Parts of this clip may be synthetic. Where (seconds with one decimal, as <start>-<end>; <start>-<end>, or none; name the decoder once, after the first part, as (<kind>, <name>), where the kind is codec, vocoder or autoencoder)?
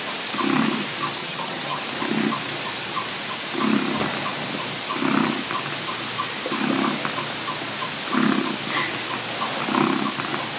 1.2-1.8 (vocoder, HiFi-GAN)